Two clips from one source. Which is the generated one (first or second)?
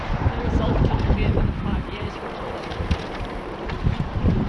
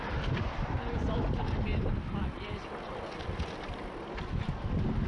first